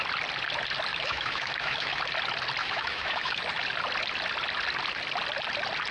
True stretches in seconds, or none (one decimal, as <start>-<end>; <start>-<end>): 0.0-0.9; 2.0-2.6; 3.4-5.9